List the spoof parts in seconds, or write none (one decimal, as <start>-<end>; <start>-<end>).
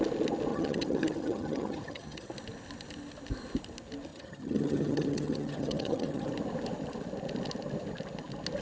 0.5-2.3; 4.1-6.3